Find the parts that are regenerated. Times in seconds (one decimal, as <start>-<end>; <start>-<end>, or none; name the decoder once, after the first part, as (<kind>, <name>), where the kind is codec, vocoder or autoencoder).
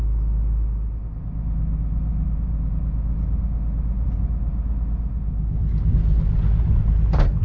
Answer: none